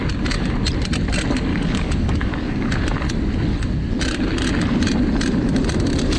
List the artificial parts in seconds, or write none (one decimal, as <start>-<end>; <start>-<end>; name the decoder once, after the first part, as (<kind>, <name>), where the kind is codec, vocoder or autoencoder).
1.5-2.7 (codec, DAC)